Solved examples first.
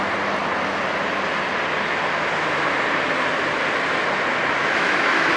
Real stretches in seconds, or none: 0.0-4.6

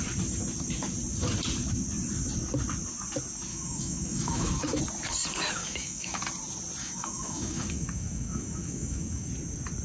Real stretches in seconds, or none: 0.0-3.5; 4.8-5.6; 6.2-6.8; 9.3-9.8

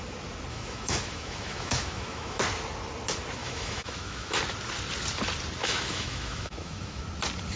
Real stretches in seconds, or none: 0.0-0.5; 2.4-3.4; 4.4-5.6; 7.0-7.6

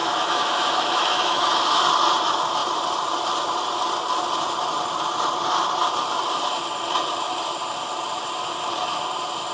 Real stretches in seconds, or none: 1.8-9.5